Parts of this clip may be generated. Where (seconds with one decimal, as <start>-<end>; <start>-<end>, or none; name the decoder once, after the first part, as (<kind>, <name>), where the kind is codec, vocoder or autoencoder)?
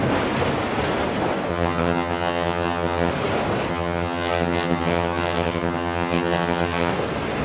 1.5-3.1 (vocoder, HiFi-GAN); 3.7-6.9